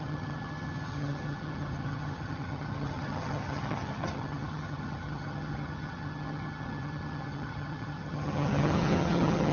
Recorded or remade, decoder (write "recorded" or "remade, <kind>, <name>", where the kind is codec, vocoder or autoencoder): remade, vocoder, HiFi-GAN